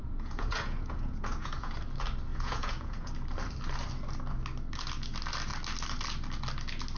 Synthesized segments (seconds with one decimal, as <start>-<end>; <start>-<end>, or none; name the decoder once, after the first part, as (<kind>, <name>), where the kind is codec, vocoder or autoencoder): 0.0-1.7 (vocoder, Vocos); 2.3-3.1